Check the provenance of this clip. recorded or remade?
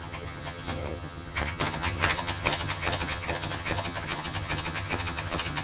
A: remade